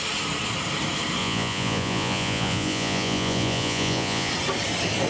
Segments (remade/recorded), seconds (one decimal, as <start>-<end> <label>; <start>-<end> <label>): 0.0-1.2 recorded; 1.2-4.3 remade; 4.3-5.1 recorded